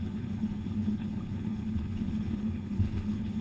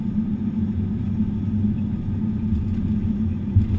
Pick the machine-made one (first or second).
first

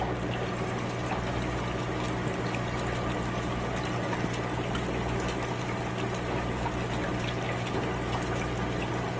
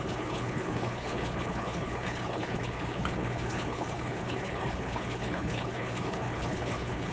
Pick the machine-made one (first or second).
second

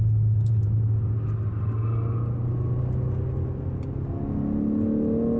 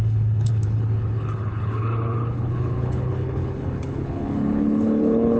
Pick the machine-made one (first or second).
second